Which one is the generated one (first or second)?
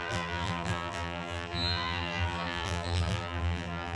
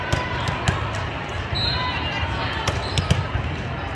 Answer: first